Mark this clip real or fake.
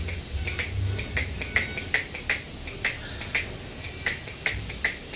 real